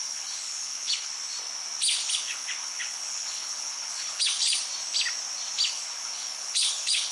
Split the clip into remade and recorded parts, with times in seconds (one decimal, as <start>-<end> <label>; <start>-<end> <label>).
0.0-1.1 remade; 1.1-2.1 recorded; 2.1-4.6 remade; 4.6-5.7 recorded; 5.7-7.1 remade